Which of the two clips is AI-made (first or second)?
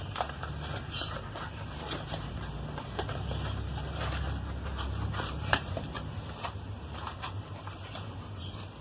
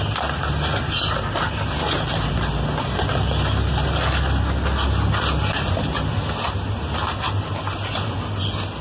first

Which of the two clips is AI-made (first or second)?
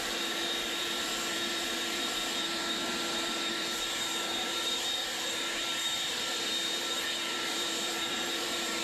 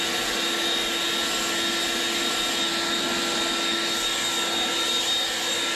first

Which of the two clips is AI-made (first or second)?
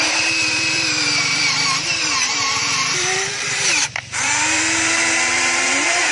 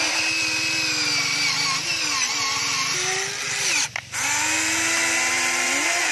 first